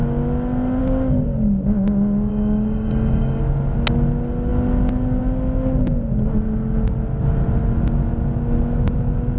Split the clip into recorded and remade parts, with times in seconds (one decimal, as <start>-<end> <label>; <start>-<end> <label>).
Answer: 0.0-2.3 recorded; 2.3-3.4 remade; 3.4-9.4 recorded